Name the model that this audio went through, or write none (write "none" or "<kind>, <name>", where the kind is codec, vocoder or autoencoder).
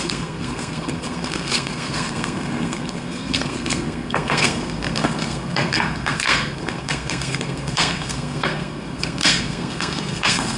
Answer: codec, SNAC